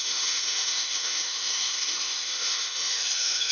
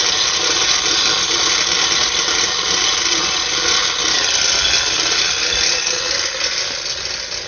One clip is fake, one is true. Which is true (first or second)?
second